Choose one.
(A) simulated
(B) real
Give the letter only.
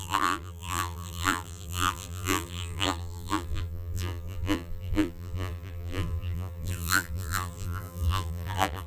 A